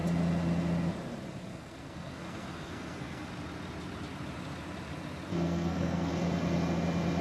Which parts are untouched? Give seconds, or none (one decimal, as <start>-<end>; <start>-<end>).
0.0-1.5; 3.3-5.3; 6.1-7.2